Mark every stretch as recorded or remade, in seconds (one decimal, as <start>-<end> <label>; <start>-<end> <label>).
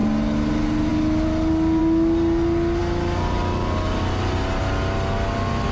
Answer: 0.0-5.7 recorded